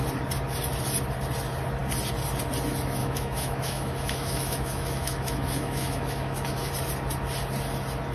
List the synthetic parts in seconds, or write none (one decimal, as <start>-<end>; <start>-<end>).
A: 3.0-6.7